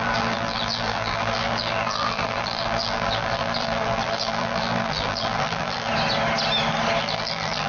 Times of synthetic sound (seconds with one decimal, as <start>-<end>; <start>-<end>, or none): 0.0-5.9; 7.0-7.7